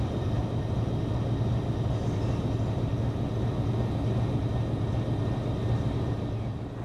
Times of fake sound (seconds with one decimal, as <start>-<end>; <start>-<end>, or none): 0.0-0.4; 1.9-2.9; 5.4-6.8